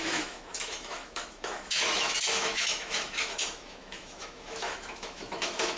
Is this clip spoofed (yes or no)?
yes